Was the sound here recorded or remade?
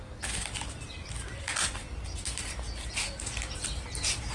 recorded